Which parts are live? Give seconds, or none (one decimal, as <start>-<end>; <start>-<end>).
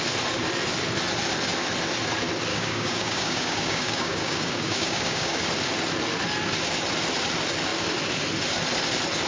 0.0-2.5; 5.4-9.3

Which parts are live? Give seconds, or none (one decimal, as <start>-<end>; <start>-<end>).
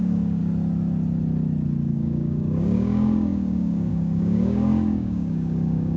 0.4-1.9